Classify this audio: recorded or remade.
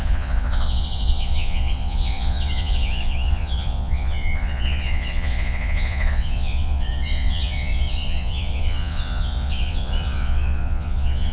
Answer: remade